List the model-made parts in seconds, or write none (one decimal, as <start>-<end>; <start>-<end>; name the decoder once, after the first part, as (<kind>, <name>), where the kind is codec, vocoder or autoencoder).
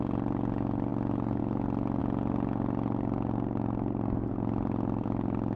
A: none